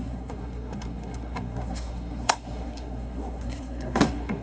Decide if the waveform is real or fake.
fake